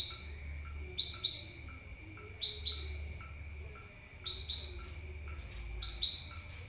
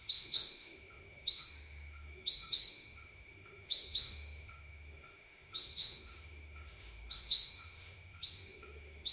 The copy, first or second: second